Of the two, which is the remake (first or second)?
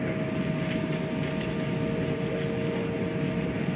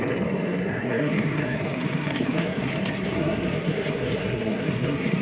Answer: second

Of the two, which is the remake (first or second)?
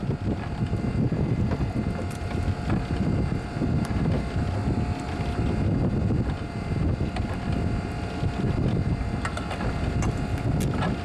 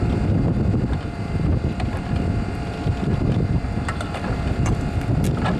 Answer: second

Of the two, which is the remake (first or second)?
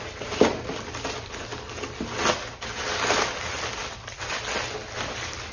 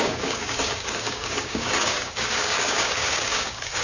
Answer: second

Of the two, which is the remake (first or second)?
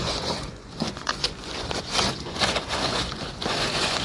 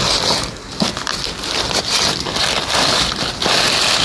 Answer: first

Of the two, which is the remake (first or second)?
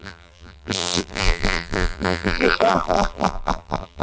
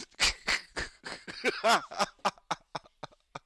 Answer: first